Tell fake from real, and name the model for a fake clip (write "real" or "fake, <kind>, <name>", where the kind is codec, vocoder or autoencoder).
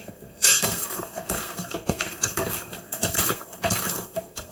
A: fake, codec, SNAC